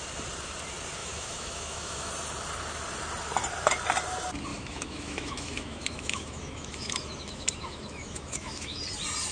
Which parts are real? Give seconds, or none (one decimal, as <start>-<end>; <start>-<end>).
0.0-1.0; 2.1-4.5; 8.8-9.3

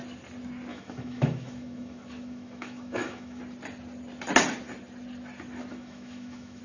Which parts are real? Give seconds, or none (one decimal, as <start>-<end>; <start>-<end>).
0.0-0.7; 3.4-5.7

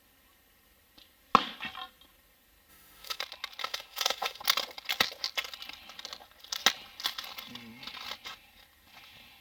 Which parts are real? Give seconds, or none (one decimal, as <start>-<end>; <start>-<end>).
0.0-2.7; 3.2-3.6; 4.4-9.4

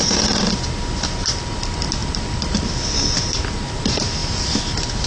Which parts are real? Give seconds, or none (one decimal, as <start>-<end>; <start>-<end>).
0.0-5.1

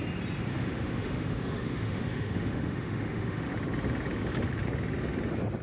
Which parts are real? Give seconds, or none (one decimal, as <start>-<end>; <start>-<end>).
0.0-0.5; 3.5-5.6

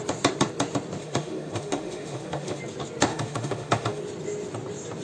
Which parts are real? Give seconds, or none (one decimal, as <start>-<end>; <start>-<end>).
0.0-1.0; 2.6-3.1; 4.0-5.0

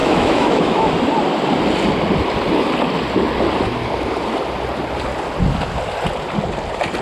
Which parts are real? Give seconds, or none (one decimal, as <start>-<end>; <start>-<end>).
0.9-7.0

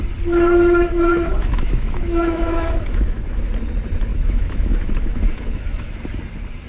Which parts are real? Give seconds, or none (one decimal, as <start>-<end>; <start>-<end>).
0.0-1.1; 3.5-4.1; 6.0-6.7